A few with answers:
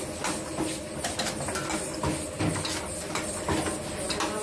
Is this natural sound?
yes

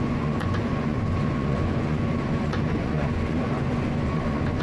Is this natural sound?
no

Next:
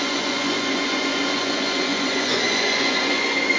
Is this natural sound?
no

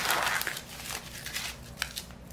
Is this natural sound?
yes